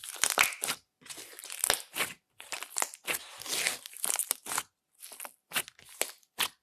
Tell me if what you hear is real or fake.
real